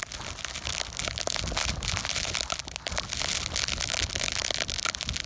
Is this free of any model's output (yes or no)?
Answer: yes